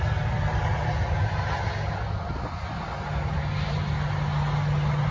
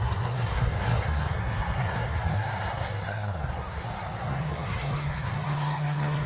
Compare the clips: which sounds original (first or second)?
first